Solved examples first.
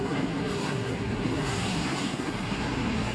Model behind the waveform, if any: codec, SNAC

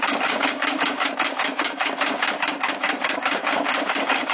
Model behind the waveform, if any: codec, DAC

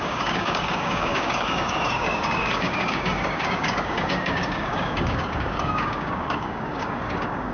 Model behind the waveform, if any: codec, DAC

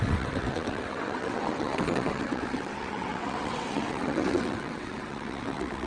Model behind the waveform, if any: vocoder, WaveNeXt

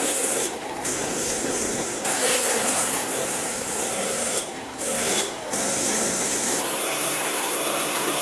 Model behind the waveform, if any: codec, SNAC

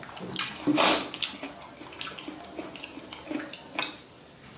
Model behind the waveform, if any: none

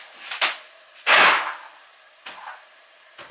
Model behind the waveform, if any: none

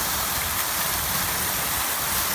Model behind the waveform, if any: none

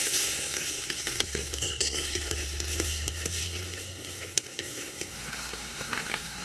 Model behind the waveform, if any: codec, SNAC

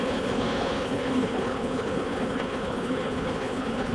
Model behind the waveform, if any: codec, HILCodec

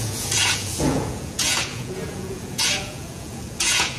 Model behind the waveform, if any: vocoder, Vocos